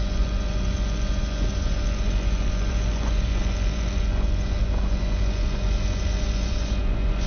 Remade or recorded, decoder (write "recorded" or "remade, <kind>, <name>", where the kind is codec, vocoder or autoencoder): remade, vocoder, Vocos